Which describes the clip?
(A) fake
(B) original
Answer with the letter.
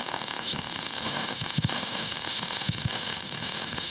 A